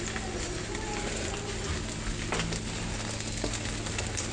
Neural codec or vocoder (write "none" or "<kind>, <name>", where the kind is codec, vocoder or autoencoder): none